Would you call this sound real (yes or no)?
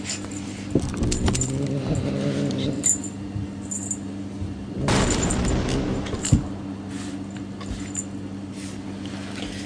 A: yes